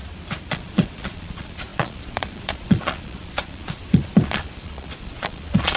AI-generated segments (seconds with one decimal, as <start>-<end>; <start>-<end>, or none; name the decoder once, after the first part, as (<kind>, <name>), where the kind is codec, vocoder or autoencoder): 0.5-5.8 (vocoder, Vocos)